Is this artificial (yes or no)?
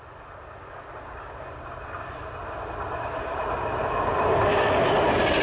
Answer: no